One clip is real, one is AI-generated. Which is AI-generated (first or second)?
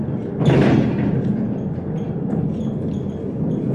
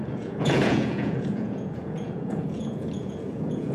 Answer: second